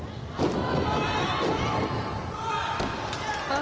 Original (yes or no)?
yes